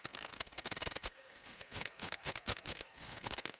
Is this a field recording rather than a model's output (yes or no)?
no